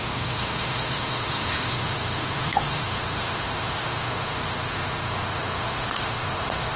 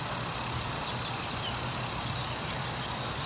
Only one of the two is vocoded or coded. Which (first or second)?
first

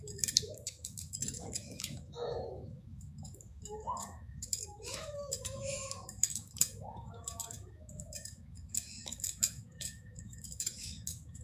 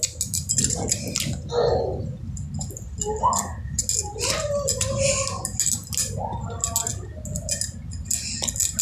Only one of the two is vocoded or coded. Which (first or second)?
first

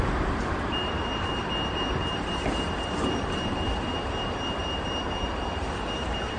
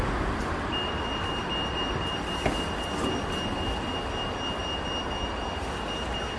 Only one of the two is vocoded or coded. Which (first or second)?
first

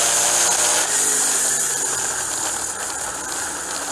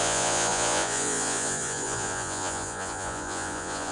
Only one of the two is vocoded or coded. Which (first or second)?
second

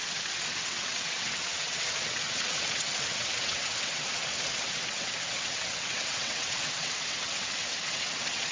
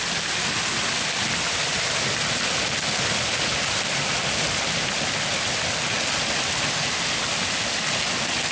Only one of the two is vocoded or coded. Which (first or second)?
first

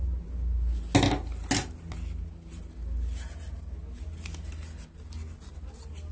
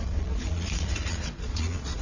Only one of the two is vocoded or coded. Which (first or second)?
second